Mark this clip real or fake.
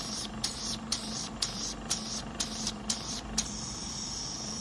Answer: fake